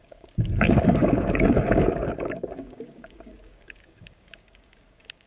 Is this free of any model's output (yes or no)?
no